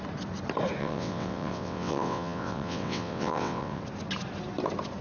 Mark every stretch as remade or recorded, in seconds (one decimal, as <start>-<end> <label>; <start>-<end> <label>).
0.0-0.8 recorded; 0.8-3.8 remade; 3.8-5.0 recorded